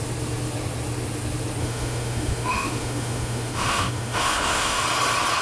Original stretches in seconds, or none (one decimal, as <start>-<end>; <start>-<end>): 0.0-1.6; 4.8-5.4